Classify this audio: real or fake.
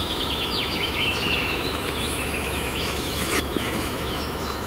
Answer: fake